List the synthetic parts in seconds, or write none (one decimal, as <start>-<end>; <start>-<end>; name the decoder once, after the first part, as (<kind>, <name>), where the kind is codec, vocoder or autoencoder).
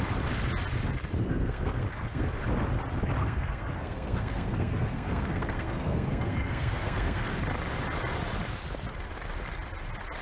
1.2-2.3 (codec, SNAC); 3.2-7.4